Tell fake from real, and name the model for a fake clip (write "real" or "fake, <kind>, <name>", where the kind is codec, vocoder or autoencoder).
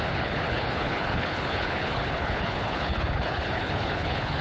fake, codec, HILCodec